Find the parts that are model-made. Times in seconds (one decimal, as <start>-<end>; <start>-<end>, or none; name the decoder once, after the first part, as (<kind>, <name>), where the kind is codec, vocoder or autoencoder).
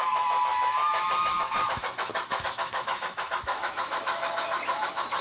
0.0-5.2 (autoencoder, DAC-VAE)